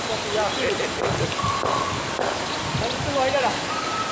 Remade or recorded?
recorded